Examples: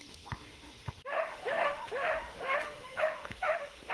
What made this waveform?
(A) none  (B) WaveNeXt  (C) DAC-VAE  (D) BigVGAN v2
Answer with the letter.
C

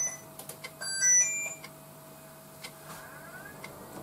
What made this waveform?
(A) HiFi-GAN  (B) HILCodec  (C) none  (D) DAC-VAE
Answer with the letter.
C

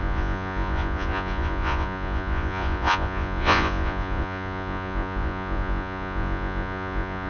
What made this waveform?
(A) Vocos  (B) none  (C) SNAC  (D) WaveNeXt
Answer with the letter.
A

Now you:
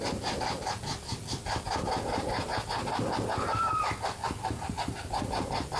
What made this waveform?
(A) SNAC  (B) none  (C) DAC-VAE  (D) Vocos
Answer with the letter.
B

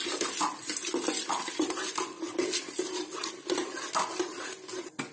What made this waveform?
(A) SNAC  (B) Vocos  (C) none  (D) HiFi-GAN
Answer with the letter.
C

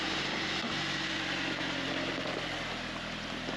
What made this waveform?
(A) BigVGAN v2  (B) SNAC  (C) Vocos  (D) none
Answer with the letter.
D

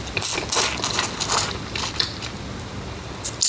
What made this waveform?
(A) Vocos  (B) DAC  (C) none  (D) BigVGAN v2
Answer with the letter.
C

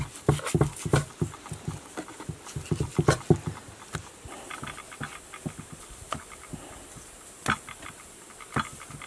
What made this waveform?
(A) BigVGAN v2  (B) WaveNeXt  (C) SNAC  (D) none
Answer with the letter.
D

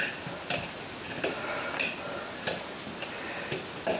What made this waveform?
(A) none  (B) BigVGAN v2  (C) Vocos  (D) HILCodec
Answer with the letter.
A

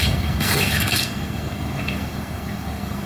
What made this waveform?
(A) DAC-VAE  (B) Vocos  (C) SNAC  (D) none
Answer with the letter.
C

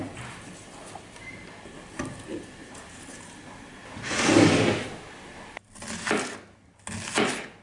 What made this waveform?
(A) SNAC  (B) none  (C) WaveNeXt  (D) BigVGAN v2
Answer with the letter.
B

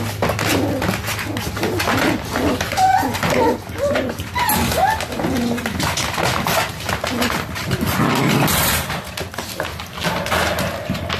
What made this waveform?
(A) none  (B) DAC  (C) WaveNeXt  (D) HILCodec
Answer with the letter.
A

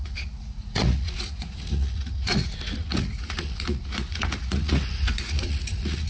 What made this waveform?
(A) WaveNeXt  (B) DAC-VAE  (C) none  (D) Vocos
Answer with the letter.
D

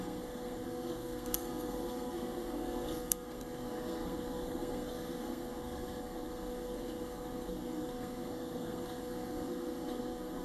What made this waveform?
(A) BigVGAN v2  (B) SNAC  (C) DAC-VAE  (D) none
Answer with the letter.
B